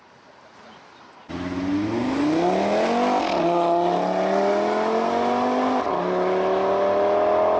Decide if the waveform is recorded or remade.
recorded